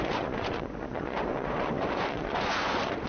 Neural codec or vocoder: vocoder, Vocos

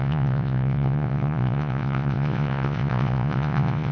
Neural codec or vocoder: vocoder, Vocos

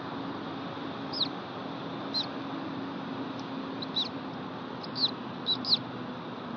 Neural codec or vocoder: none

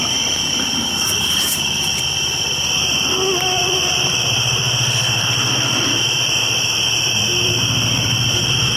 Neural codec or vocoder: vocoder, BigVGAN v2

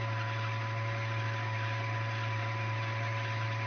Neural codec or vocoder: none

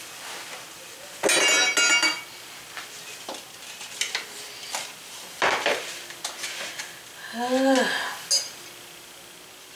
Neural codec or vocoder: none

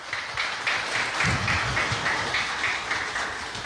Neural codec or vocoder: none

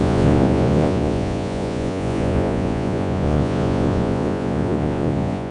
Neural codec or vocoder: vocoder, Vocos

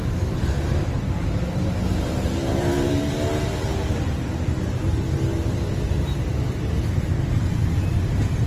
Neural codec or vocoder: vocoder, BigVGAN v2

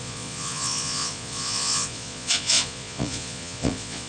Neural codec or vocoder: vocoder, Vocos